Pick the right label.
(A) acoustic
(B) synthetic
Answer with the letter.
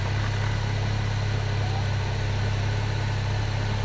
A